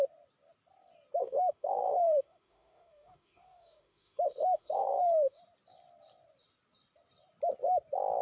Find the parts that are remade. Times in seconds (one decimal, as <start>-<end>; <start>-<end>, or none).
1.2-5.4